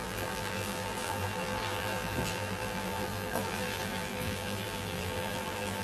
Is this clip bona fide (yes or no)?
no